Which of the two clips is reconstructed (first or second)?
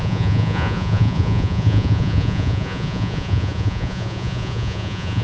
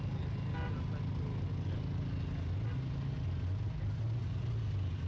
first